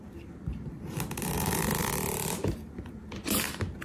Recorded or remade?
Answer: remade